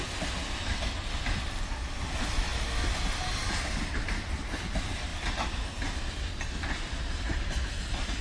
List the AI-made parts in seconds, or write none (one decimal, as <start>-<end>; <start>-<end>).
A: none